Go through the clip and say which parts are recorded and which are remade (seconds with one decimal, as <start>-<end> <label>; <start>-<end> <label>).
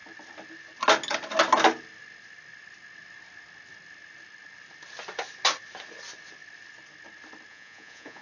0.0-7.5 recorded; 7.5-8.2 remade